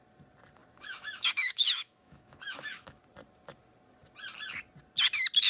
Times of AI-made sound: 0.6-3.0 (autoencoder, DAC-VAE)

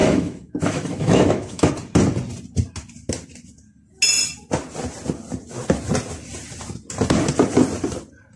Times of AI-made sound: 0.0-1.7 (autoencoder, DAC-VAE)

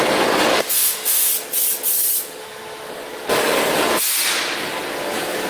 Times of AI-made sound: 0.5-1.3 (autoencoder, DAC-VAE); 2.4-2.9

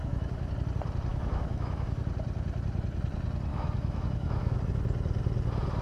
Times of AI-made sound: 0.0-0.5 (autoencoder, DAC-VAE); 1.1-2.0; 3.5-4.6